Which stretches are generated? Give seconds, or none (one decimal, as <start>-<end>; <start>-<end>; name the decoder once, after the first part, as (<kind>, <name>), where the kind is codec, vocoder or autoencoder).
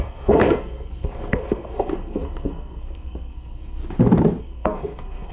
0.0-3.8 (codec, SNAC); 4.4-5.3